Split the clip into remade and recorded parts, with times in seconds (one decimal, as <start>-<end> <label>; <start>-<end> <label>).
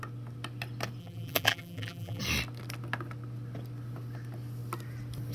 0.0-1.0 recorded; 1.0-2.2 remade; 2.2-5.3 recorded